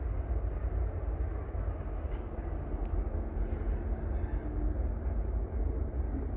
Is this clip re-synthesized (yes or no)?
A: no